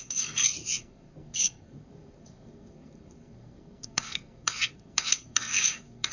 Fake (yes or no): yes